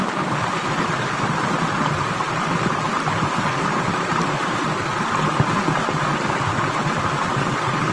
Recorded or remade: recorded